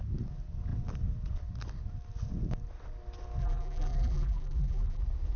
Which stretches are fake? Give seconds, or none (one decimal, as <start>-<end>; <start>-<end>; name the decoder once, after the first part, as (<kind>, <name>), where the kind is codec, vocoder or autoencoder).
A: 3.4-5.0 (vocoder, BigVGAN v2)